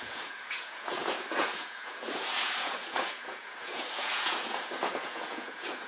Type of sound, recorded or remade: remade